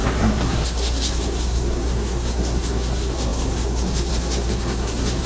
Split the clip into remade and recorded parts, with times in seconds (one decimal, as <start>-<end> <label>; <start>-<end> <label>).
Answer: 0.0-5.3 remade